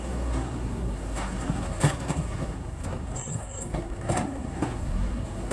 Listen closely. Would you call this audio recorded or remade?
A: remade